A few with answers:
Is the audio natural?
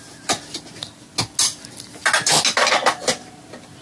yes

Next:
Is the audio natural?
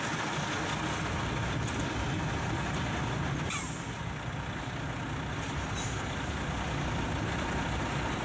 yes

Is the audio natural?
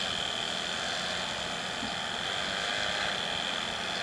yes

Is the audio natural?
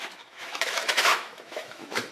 no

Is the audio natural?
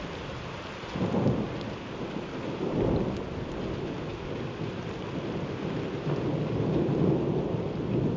yes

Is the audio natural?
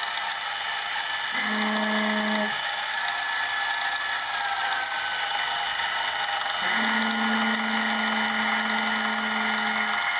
yes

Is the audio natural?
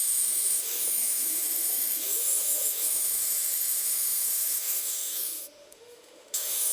no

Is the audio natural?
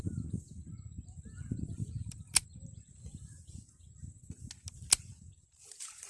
yes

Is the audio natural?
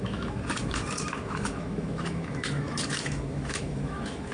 no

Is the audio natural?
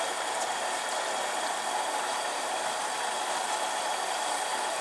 yes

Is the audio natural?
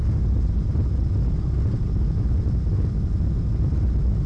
yes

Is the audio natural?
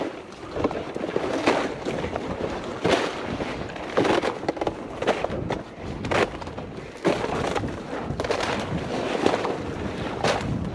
yes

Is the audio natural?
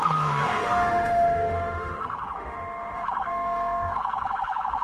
no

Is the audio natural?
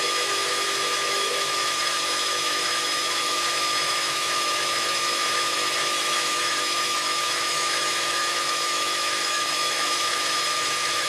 no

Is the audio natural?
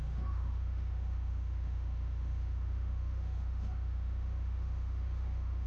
no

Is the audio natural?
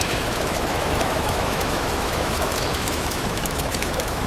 no